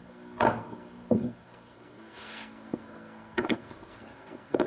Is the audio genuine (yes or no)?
no